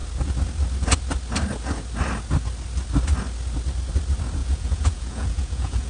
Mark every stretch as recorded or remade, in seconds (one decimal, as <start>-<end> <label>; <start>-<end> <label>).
0.0-4.4 recorded; 4.4-5.9 remade